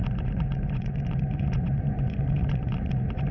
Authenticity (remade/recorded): remade